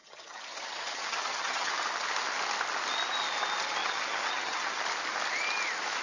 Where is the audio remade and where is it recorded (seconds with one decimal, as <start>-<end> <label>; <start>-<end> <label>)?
0.0-1.7 remade; 1.7-3.8 recorded; 3.8-4.8 remade; 4.8-6.0 recorded